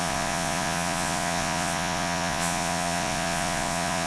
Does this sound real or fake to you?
fake